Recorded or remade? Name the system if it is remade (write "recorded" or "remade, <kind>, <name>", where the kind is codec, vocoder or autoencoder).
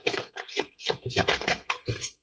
remade, codec, SNAC